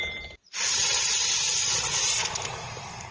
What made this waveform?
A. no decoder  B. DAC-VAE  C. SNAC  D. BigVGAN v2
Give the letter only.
A